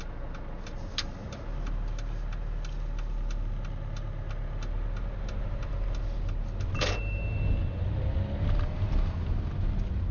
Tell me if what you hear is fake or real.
real